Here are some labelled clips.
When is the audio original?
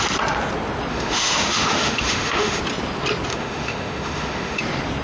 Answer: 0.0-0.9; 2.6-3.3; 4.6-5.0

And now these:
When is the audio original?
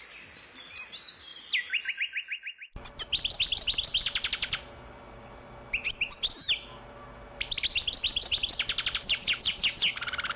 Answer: 0.0-10.4